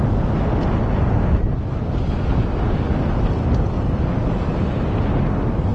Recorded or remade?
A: recorded